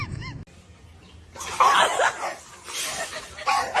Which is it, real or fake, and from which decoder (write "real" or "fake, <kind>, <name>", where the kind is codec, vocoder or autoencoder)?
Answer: real